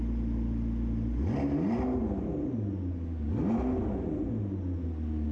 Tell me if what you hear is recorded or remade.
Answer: recorded